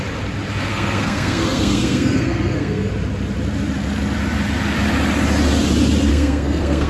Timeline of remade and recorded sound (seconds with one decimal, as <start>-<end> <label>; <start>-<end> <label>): 0.0-0.7 recorded; 0.7-2.9 remade; 2.9-6.1 recorded; 6.1-6.9 remade